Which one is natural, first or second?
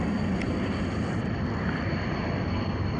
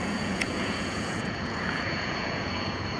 first